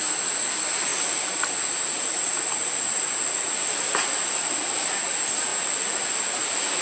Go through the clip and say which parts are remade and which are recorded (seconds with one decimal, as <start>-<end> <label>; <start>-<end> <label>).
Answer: 0.0-6.8 recorded